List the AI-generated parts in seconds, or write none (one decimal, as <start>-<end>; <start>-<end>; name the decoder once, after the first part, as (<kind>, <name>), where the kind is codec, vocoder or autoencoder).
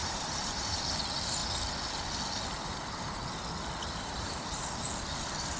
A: 0.0-0.8 (vocoder, BigVGAN v2); 3.8-4.6